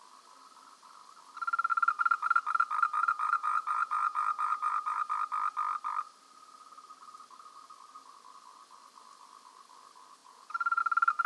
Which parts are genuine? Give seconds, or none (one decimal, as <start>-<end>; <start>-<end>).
0.0-3.0; 5.0-10.2; 10.8-11.3